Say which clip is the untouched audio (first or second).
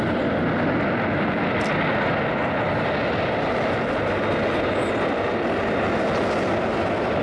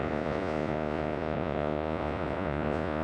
first